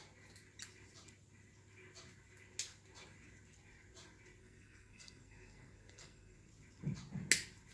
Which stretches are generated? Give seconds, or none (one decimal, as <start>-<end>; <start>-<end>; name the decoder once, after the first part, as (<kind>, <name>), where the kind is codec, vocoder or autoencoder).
4.4-6.5 (codec, SNAC)